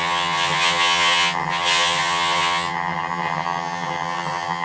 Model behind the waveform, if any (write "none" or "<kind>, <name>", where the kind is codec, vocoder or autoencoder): vocoder, HiFi-GAN